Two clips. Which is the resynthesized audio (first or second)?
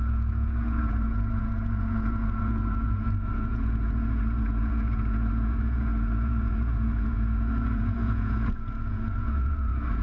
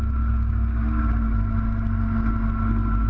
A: first